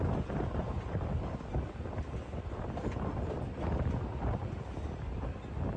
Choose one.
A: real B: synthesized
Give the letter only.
A